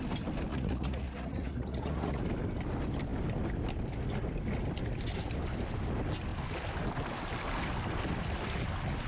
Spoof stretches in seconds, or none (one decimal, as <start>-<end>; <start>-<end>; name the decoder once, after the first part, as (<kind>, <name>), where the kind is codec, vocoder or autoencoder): 0.5-2.2 (vocoder, Vocos)